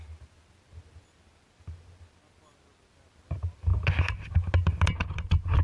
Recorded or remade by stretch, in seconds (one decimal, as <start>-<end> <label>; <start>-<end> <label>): 0.0-5.6 recorded